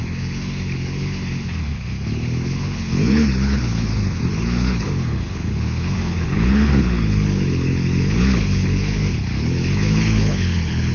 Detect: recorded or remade remade